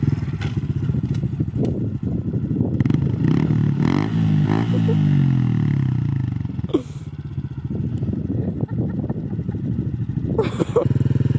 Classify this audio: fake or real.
real